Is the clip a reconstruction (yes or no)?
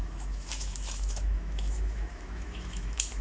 yes